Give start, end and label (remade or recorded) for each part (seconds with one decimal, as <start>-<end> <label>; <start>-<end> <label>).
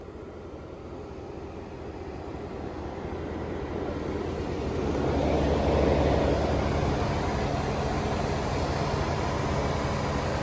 0.0-10.4 recorded